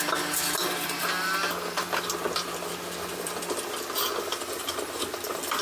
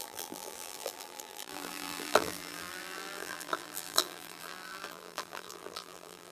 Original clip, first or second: first